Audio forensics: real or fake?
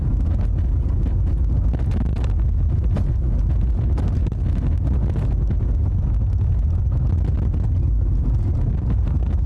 real